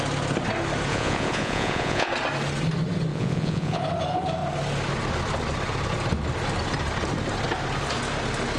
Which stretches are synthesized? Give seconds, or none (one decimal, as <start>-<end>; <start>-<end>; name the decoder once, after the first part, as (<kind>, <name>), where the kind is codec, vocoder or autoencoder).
0.9-2.1 (vocoder, Vocos); 3.1-3.8